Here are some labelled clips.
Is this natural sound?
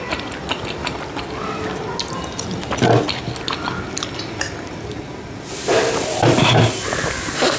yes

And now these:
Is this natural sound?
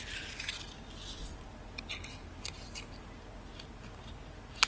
yes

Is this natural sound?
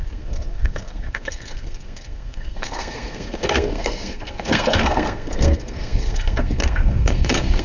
no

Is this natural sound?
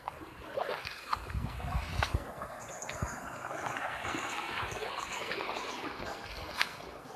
no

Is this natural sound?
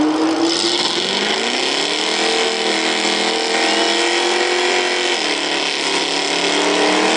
yes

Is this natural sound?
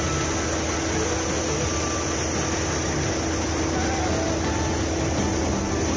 yes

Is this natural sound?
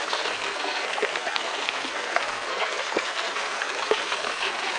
no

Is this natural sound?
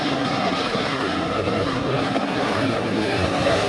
no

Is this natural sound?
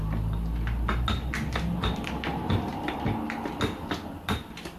yes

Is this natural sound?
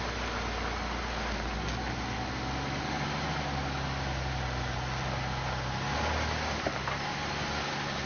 yes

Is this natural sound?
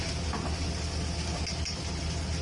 yes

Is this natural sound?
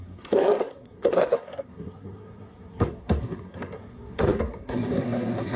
no